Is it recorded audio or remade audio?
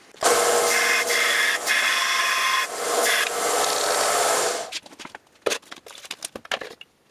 recorded